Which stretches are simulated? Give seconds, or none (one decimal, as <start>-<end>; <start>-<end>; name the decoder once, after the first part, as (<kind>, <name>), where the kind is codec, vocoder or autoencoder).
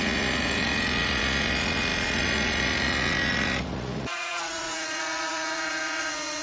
0.0-6.4 (vocoder, Vocos)